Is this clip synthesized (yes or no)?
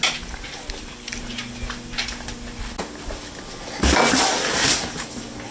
no